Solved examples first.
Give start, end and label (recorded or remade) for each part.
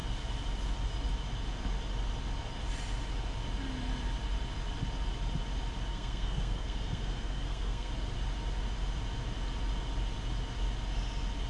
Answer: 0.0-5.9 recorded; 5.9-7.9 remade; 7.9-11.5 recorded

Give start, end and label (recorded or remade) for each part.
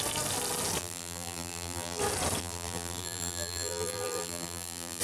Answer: 0.0-0.8 recorded; 0.8-2.0 remade; 2.0-2.4 recorded; 2.4-5.0 remade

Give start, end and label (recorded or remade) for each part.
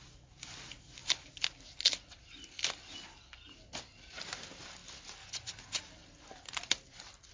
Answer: 0.0-7.3 recorded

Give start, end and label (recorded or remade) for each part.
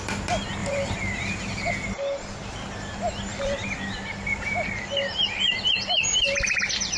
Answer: 0.0-0.6 recorded; 0.6-1.7 remade; 1.7-3.3 recorded; 3.3-6.6 remade; 6.6-7.0 recorded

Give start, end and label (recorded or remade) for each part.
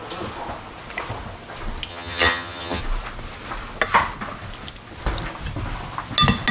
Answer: 0.0-1.9 recorded; 1.9-2.8 remade; 2.8-6.5 recorded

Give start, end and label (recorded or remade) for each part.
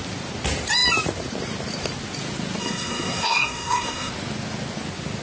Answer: 0.0-2.6 recorded; 2.6-4.1 remade; 4.1-5.2 recorded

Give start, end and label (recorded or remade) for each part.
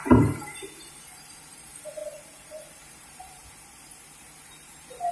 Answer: 0.0-3.4 remade; 3.4-4.2 recorded; 4.2-5.1 remade